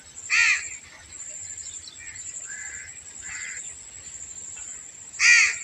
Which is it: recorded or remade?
recorded